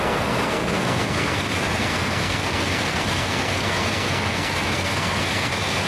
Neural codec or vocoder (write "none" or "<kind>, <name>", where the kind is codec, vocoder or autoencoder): codec, SNAC